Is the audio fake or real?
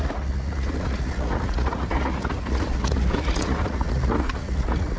fake